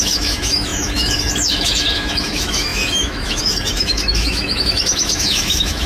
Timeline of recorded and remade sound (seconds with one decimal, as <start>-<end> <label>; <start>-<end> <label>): 0.0-5.9 remade